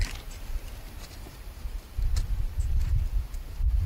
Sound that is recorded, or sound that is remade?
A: remade